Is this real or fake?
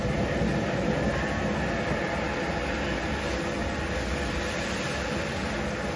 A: real